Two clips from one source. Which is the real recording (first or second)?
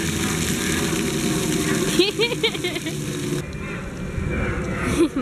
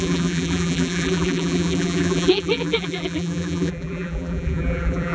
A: first